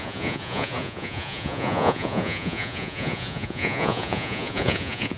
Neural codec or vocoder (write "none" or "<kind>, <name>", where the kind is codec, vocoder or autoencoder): vocoder, Vocos